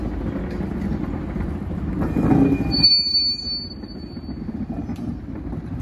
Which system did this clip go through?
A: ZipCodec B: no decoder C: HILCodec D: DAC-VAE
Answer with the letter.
B